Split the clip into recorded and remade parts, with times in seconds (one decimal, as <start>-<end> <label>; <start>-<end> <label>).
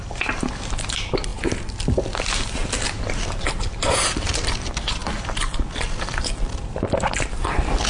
0.0-7.9 recorded